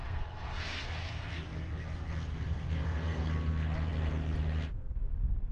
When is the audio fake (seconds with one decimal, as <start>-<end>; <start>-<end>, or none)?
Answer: 0.0-1.3; 2.3-3.3